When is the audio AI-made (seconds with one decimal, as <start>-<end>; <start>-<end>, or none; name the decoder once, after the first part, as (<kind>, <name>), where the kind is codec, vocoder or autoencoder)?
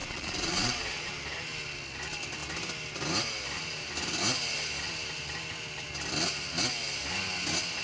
0.0-1.1 (vocoder, Vocos)